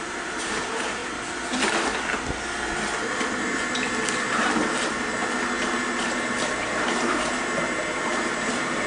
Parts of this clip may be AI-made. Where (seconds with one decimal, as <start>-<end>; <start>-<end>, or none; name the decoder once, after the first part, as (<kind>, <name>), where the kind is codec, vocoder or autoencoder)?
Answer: 0.0-1.0 (vocoder, BigVGAN v2); 6.0-8.9